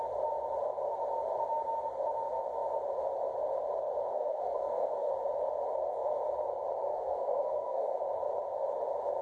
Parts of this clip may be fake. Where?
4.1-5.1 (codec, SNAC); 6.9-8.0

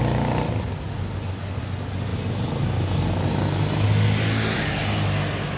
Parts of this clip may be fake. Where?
none